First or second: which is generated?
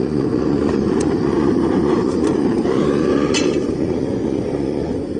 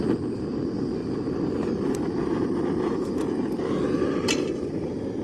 first